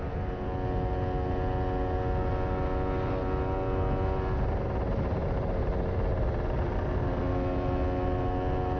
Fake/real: real